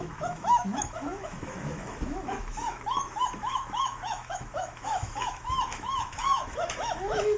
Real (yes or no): no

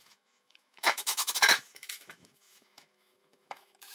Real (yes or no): no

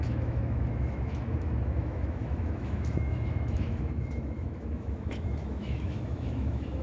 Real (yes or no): no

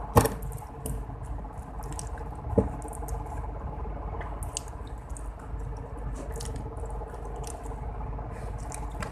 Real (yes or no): yes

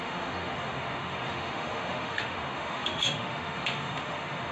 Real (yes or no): no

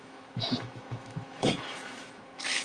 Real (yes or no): no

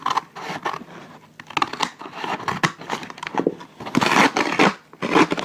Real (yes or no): yes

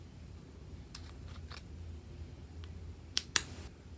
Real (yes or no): yes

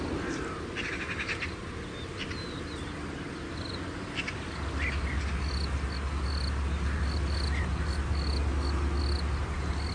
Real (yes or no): yes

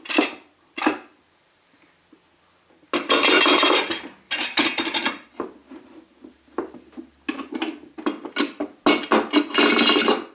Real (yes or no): yes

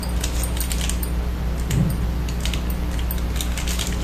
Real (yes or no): yes